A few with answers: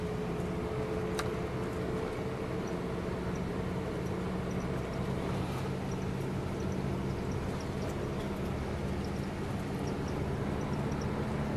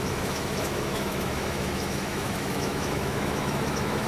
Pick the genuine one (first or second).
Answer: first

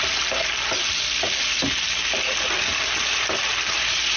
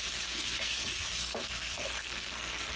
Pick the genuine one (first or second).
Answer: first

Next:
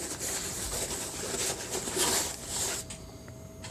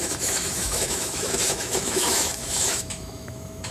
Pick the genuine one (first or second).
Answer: first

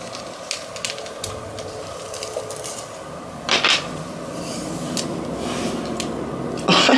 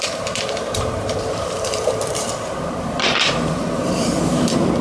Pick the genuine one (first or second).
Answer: first